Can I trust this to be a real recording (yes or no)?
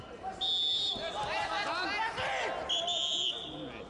yes